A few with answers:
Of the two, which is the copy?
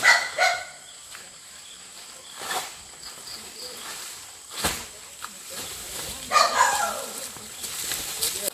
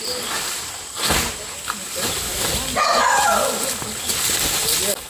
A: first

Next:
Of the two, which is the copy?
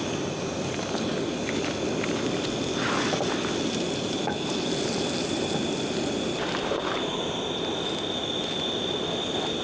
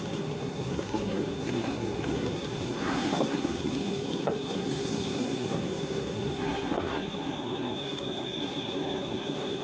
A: second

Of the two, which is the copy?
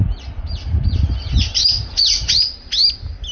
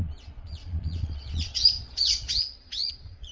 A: second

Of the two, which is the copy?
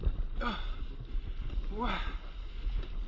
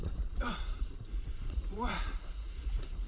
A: second